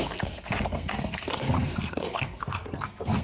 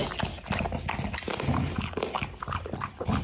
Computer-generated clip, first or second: first